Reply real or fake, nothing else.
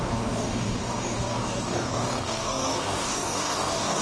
fake